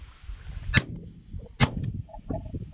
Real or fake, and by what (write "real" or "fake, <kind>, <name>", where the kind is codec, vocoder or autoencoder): real